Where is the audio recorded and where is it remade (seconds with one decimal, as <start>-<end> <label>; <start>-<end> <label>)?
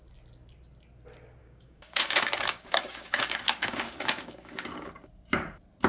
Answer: 0.0-1.4 recorded; 1.4-4.9 remade; 4.9-5.9 recorded